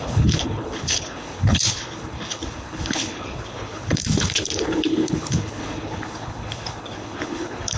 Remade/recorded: remade